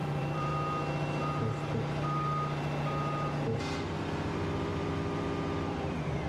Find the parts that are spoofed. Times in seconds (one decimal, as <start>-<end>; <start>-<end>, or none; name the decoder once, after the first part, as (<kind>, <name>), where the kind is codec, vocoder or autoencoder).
0.0-0.5 (vocoder, BigVGAN v2); 4.3-6.3